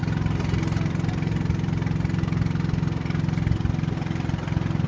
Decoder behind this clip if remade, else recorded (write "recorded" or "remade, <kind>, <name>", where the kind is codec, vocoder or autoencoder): recorded